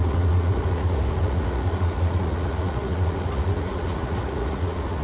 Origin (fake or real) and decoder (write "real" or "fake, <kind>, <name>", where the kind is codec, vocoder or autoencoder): fake, vocoder, Vocos